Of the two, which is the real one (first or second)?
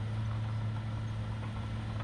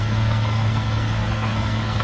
first